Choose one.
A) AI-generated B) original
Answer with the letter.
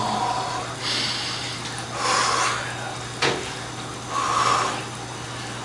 B